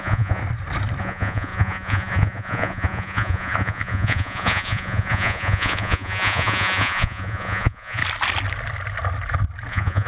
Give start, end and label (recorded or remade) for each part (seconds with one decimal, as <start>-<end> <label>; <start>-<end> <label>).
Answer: 0.0-0.4 remade; 0.4-1.0 recorded; 1.0-8.0 remade; 8.0-9.7 recorded; 9.7-10.1 remade